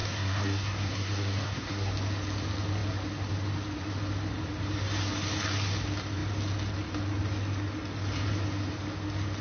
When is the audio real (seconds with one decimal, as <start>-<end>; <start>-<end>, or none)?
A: 1.9-9.4